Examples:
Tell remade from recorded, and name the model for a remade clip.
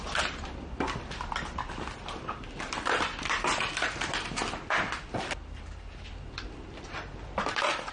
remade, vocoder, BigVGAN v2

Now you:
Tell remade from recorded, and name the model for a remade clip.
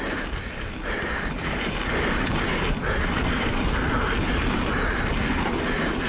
recorded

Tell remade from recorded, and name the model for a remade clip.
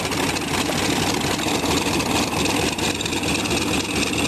recorded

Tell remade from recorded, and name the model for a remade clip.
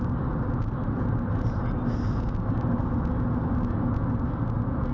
recorded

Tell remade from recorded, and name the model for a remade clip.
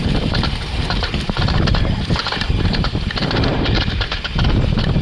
remade, vocoder, BigVGAN v2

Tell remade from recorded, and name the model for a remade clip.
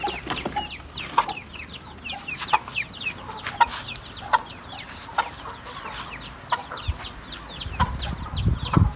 recorded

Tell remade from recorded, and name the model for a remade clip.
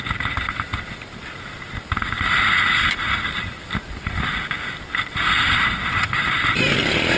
recorded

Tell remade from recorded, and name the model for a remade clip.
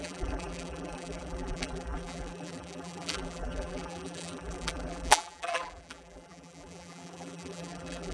remade, vocoder, BigVGAN v2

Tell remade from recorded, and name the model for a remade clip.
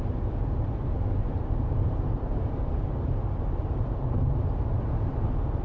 remade, vocoder, BigVGAN v2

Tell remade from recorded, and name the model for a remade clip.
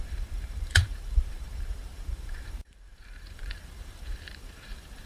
remade, vocoder, BigVGAN v2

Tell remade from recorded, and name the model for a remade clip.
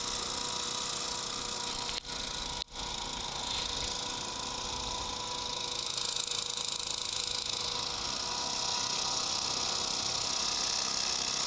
recorded